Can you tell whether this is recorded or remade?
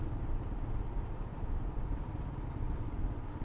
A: recorded